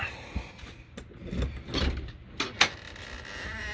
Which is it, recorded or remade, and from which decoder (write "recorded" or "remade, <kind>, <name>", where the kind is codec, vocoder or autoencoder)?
recorded